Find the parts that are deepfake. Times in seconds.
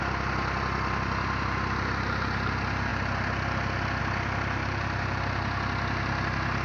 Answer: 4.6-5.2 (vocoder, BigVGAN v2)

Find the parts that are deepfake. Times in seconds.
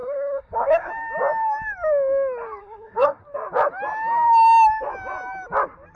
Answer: 0.0-0.9 (codec, SNAC); 2.6-3.2